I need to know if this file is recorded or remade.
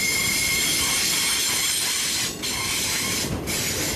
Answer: recorded